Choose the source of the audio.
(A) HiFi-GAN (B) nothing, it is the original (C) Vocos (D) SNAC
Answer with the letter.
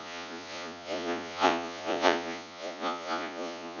C